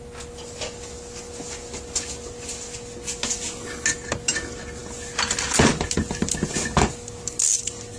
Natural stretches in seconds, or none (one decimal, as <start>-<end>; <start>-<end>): 0.0-8.0